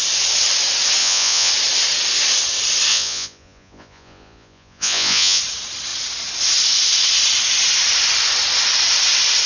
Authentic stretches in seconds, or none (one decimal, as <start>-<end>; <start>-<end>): 0.0-1.0; 1.5-2.9; 5.4-9.5